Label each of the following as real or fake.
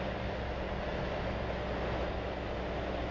real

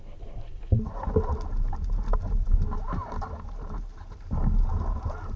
fake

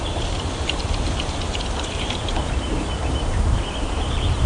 fake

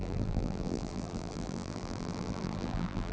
fake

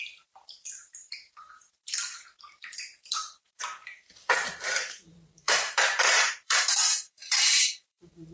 fake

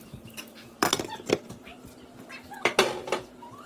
fake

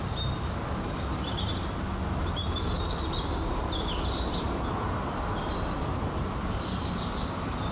fake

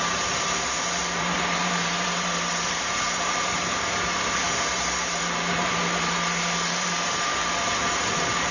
fake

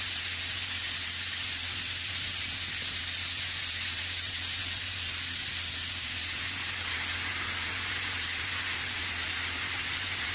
fake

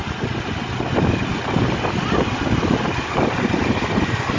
real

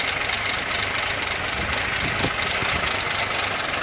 real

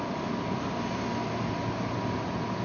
real